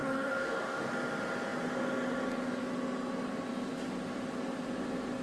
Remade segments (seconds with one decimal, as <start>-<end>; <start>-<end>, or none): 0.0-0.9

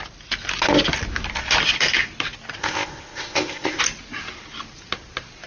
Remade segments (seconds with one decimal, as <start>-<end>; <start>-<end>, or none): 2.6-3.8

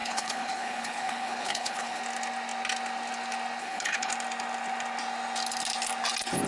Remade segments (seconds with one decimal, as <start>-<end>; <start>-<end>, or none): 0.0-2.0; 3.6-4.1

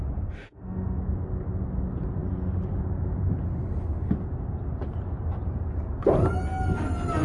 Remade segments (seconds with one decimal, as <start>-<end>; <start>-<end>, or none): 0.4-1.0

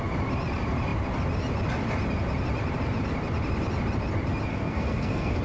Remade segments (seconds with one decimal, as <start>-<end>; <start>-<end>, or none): 4.5-5.4